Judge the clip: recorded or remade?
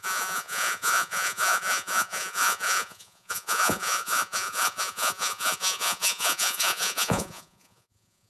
remade